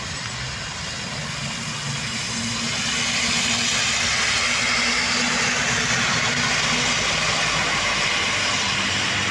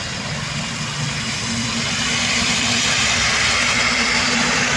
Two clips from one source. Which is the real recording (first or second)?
first